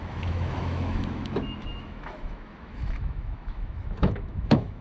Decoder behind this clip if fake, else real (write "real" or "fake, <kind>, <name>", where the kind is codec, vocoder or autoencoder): fake, autoencoder, DAC-VAE